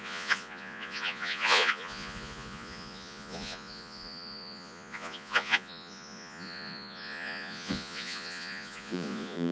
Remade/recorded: remade